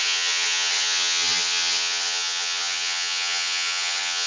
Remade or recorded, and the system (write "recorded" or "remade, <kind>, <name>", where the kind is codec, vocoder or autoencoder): remade, vocoder, HiFi-GAN